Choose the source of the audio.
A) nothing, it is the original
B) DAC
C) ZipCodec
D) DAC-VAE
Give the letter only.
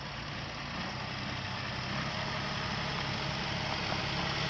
A